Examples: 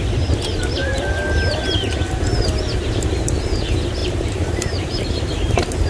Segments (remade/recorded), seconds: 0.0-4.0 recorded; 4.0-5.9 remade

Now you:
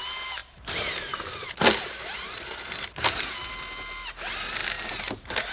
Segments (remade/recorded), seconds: 0.0-0.4 recorded; 0.4-3.3 remade; 3.3-4.6 recorded; 4.6-5.5 remade

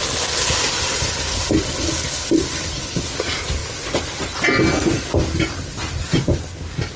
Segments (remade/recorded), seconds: 0.0-7.0 recorded

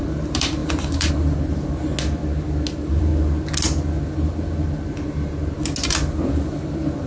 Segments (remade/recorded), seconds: 0.0-1.9 remade; 1.9-2.7 recorded; 2.7-3.1 remade; 3.1-6.3 recorded; 6.3-7.1 remade